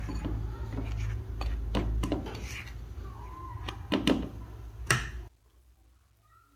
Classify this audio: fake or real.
real